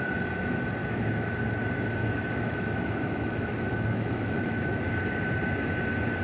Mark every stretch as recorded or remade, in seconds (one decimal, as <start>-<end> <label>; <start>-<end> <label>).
0.0-0.8 recorded; 0.8-1.4 remade; 1.4-2.0 recorded; 2.0-4.8 remade; 4.8-6.2 recorded

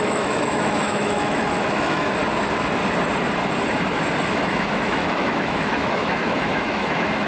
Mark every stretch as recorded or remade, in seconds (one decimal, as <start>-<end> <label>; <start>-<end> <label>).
0.0-2.2 remade; 2.2-4.3 recorded; 4.3-7.3 remade

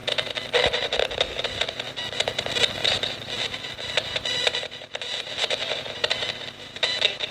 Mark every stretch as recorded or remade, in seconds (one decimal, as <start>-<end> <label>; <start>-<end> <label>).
0.0-2.1 remade; 2.1-2.8 recorded; 2.8-7.3 remade

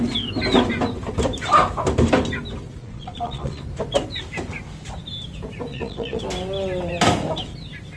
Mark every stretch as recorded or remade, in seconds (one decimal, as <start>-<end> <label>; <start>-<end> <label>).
0.0-2.8 recorded; 2.8-3.6 remade; 3.6-5.7 recorded; 5.7-6.2 remade; 6.2-8.0 recorded

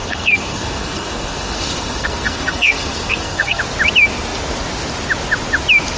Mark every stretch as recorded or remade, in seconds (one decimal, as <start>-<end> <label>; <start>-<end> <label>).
0.0-3.6 remade; 3.6-6.0 recorded